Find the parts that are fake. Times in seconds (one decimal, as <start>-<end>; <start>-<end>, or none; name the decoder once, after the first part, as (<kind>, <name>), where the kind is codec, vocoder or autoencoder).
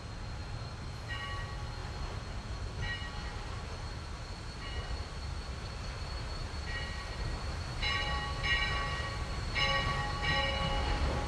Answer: none